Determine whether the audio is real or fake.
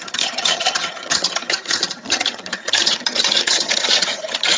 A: fake